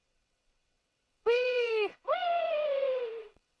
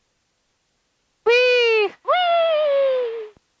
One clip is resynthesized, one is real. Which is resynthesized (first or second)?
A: first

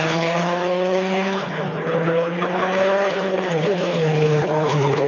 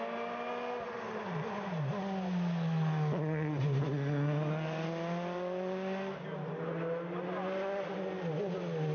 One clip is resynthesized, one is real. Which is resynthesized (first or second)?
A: first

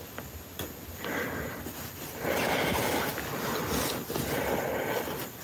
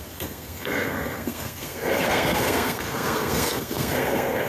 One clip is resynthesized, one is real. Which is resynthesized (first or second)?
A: second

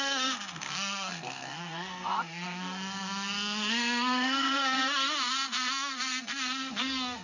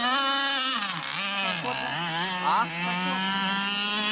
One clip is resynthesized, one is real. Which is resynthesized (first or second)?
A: first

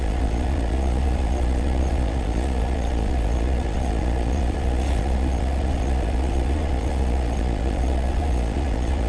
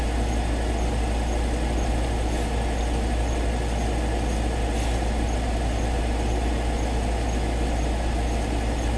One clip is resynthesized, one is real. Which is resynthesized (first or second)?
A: first